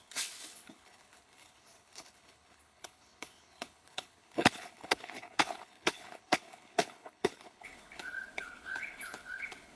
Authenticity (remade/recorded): remade